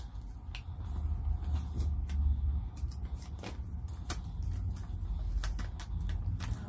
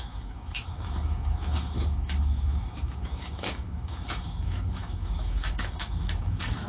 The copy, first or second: second